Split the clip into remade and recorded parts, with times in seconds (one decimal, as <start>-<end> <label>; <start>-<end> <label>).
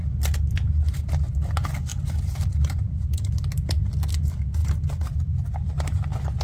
0.0-1.9 recorded; 1.9-2.8 remade; 2.8-4.6 recorded; 4.6-5.7 remade; 5.7-6.4 recorded